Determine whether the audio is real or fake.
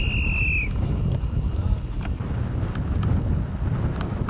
real